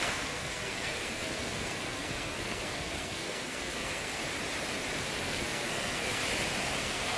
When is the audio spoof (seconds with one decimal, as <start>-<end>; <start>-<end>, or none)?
0.0-4.2; 5.2-6.2; 6.8-7.2